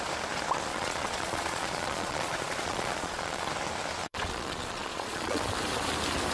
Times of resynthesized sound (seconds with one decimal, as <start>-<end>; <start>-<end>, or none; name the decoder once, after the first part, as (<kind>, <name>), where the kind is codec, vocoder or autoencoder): 0.7-3.5 (vocoder, Vocos); 4.0-5.4